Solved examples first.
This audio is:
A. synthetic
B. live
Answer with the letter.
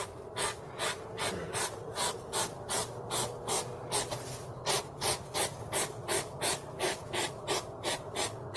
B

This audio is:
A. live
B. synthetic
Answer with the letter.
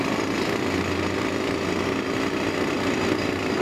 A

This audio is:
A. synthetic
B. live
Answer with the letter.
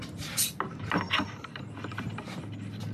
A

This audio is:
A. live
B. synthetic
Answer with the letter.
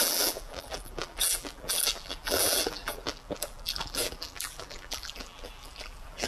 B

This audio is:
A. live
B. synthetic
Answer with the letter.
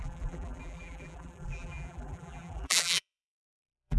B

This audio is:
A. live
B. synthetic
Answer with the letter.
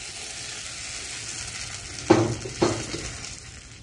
A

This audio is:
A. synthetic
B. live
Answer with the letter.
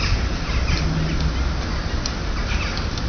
B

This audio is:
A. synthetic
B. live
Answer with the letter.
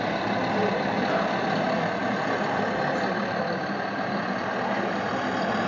A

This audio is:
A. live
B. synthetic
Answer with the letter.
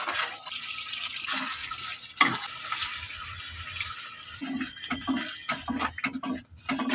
A